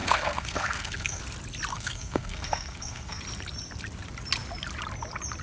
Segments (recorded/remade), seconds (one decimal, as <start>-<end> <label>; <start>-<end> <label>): 0.0-1.2 remade; 1.2-1.7 recorded; 1.7-3.2 remade; 3.2-5.4 recorded